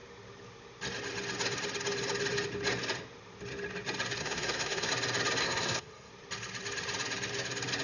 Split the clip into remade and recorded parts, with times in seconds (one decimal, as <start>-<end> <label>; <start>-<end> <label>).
0.0-4.2 recorded; 4.2-4.9 remade; 4.9-5.4 recorded; 5.4-6.1 remade; 6.1-7.8 recorded